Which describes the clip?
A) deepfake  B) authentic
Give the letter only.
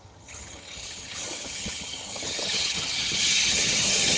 A